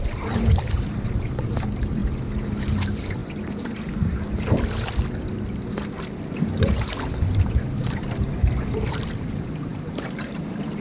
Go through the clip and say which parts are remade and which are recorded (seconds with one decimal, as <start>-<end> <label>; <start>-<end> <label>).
0.0-2.0 remade; 2.0-2.6 recorded; 2.6-3.2 remade; 3.2-7.5 recorded; 7.5-8.4 remade; 8.4-9.1 recorded; 9.1-10.8 remade